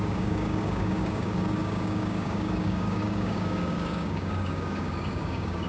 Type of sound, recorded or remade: remade